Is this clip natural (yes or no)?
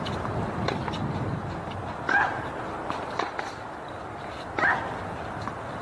yes